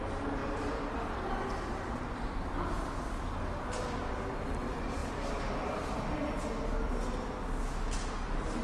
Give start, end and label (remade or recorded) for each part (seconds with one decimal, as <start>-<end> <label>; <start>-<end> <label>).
0.0-8.6 recorded